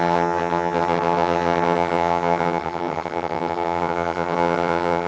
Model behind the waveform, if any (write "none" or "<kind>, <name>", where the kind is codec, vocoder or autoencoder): vocoder, HiFi-GAN